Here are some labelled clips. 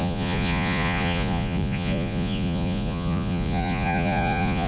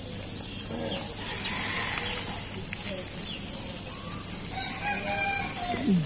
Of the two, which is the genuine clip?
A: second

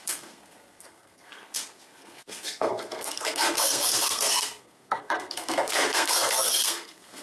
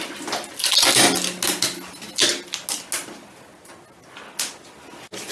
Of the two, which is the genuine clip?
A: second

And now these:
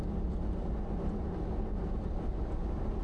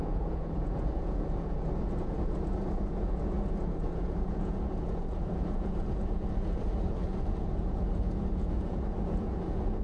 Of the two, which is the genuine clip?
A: first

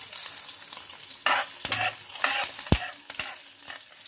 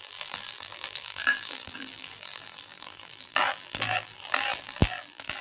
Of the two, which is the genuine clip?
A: first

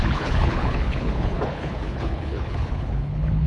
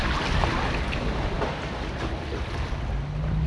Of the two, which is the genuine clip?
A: second